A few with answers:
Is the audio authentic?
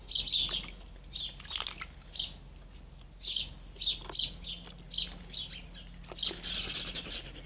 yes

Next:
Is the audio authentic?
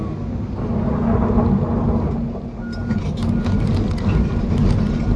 yes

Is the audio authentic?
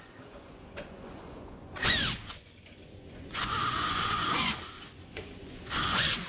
no